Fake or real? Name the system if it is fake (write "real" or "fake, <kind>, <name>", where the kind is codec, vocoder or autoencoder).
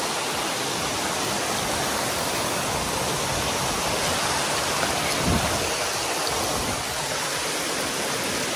real